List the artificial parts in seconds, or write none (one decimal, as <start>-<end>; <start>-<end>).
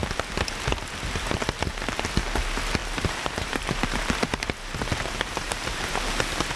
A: 2.8-5.9